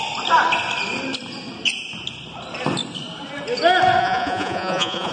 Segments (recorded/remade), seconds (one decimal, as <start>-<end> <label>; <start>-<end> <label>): 0.0-4.0 recorded; 4.0-5.1 remade